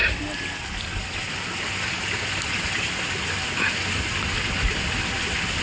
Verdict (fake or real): real